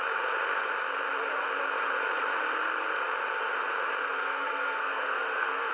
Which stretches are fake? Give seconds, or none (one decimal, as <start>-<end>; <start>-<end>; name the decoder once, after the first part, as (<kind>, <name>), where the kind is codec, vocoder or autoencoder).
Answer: 4.0-5.7 (codec, SNAC)